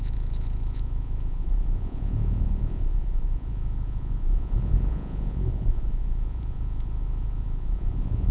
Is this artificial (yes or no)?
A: yes